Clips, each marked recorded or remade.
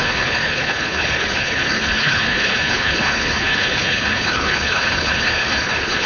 remade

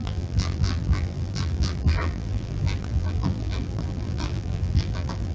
remade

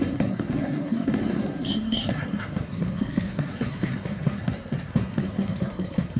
remade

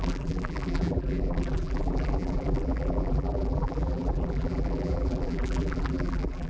remade